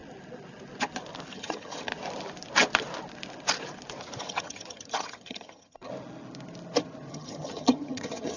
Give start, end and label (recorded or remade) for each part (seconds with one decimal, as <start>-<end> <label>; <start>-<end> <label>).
0.0-1.3 recorded; 1.3-1.9 remade; 1.9-4.2 recorded; 4.2-5.9 remade; 5.9-7.1 recorded; 7.1-8.4 remade